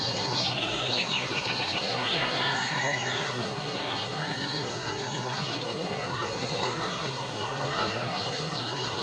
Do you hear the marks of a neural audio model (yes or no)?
yes